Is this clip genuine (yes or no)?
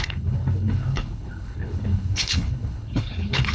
no